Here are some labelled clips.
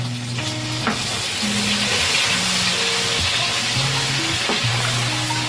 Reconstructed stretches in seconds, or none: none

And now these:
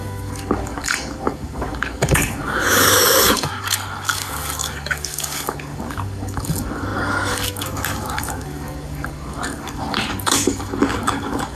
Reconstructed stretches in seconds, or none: 0.0-11.6 (codec, DAC)